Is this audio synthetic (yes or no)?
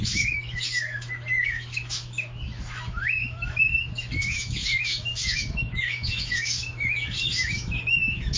yes